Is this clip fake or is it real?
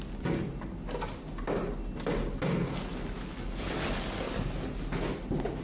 real